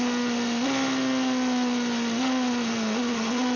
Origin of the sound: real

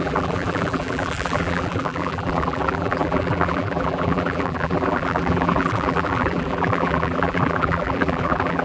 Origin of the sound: fake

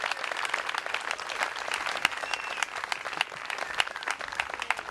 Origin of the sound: real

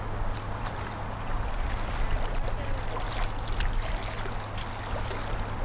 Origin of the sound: real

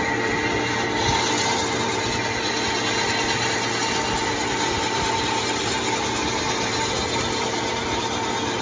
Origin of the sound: real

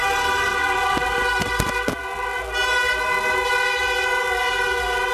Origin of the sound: real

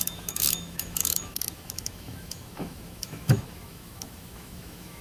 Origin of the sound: fake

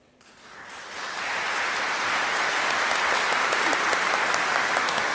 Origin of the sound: real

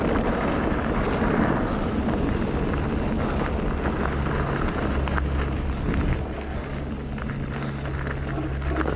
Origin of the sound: real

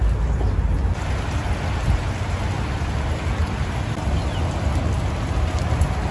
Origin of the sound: real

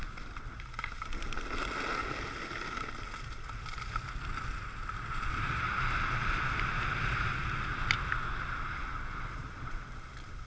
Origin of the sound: real